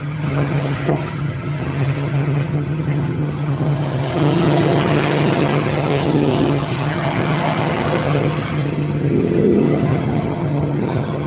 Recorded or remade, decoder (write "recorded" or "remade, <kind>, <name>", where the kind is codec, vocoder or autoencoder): remade, vocoder, HiFi-GAN